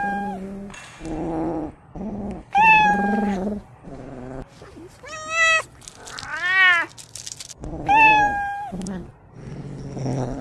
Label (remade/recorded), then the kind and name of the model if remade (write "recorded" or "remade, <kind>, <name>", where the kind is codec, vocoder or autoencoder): recorded